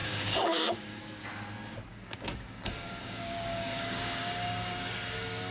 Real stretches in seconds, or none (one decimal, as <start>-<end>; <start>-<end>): 1.0-1.9